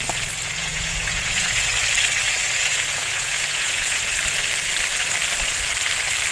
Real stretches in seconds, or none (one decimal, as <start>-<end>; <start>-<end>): 0.0-0.6; 1.7-2.7; 4.1-6.3